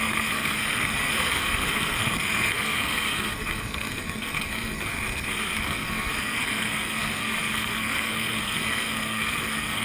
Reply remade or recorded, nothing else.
remade